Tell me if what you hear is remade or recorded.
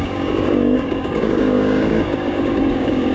remade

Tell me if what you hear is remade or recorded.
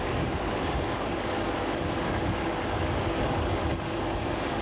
remade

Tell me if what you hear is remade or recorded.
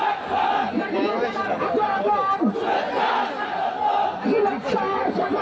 recorded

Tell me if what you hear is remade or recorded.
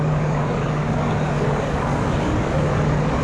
remade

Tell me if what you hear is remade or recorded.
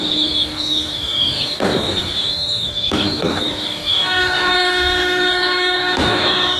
remade